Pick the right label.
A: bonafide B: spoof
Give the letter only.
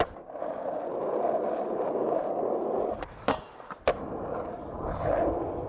A